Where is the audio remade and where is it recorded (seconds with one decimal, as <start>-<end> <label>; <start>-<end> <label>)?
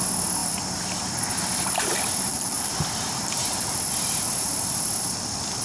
0.0-0.4 recorded; 0.4-1.2 remade; 1.2-2.3 recorded; 2.3-3.9 remade; 3.9-5.6 recorded